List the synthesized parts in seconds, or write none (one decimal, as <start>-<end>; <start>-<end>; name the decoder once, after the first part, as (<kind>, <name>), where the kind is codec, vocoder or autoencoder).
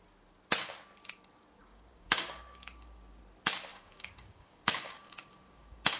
1.6-3.2 (codec, DAC); 3.7-6.0